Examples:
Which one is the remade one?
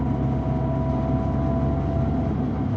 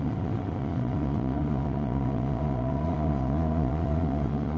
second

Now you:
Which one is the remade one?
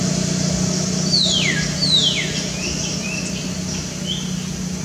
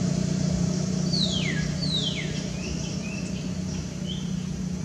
second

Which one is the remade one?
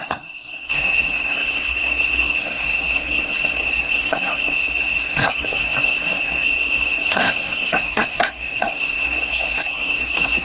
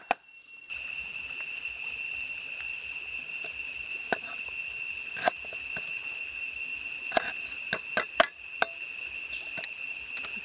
first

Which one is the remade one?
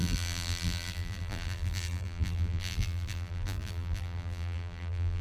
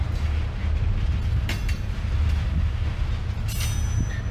first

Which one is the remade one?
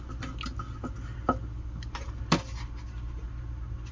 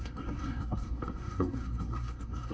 second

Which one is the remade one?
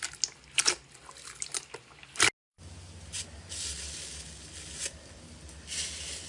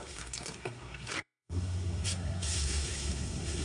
second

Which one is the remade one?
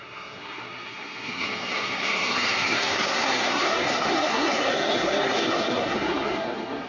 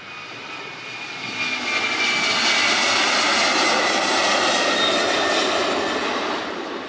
first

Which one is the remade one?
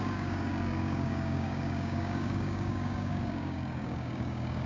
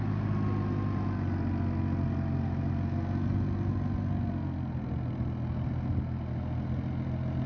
first